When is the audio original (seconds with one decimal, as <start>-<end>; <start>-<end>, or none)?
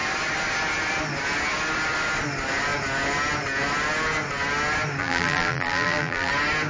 0.0-5.0; 6.3-6.7